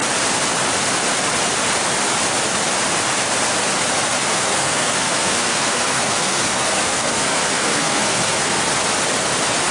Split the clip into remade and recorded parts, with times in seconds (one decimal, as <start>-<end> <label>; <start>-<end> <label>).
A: 0.0-4.3 recorded; 4.3-8.6 remade; 8.6-9.7 recorded